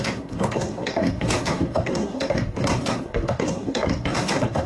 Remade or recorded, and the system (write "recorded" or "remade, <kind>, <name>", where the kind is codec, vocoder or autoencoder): remade, codec, SNAC